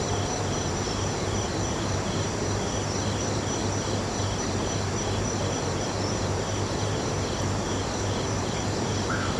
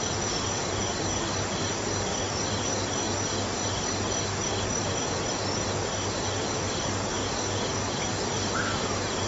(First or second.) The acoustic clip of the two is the second